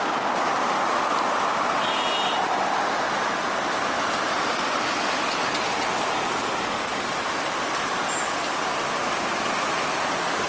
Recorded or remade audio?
recorded